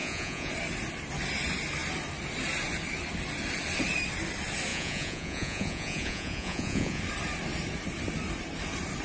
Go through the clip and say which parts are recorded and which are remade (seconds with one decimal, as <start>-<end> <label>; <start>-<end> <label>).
0.0-0.5 remade; 0.5-4.7 recorded; 4.7-7.0 remade; 7.0-9.0 recorded